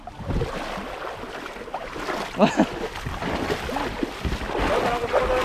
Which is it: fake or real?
real